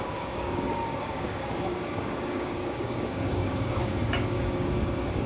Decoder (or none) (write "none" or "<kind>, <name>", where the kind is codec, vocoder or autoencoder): codec, DAC